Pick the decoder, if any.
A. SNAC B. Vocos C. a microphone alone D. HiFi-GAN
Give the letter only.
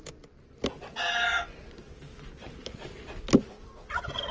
C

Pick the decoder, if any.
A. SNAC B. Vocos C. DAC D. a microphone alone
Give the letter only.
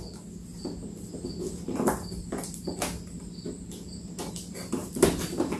D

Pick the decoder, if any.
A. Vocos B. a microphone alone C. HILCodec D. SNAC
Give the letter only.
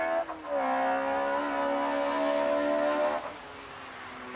B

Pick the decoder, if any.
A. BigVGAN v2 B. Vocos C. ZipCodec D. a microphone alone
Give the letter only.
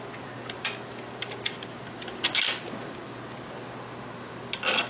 D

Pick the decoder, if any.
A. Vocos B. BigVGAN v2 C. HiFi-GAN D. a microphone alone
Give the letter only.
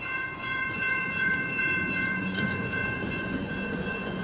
A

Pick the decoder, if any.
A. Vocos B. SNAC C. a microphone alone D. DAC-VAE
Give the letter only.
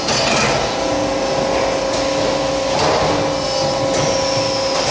C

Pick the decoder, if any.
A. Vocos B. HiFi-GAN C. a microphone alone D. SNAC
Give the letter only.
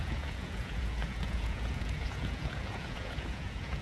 A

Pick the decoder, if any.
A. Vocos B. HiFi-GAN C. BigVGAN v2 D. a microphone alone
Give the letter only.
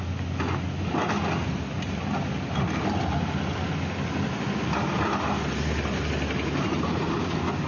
D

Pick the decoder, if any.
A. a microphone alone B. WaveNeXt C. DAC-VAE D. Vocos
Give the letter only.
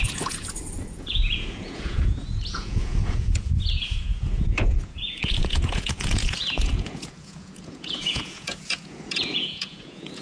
D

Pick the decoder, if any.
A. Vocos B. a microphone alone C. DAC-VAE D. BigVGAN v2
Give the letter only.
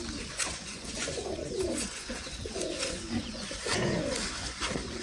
A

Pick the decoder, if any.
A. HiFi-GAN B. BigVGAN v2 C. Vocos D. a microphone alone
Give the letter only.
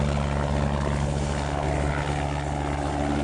D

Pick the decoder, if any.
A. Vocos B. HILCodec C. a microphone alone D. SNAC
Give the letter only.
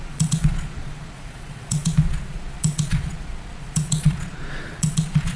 A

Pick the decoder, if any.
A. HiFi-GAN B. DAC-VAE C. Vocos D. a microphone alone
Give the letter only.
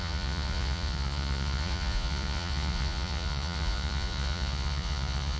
C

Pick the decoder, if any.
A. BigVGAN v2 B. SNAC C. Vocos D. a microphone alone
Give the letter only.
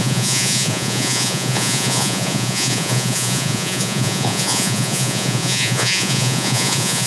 C